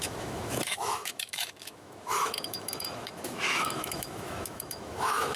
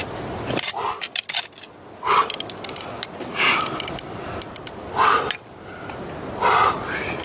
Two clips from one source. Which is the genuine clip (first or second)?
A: second